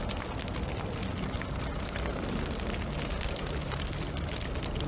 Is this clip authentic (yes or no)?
yes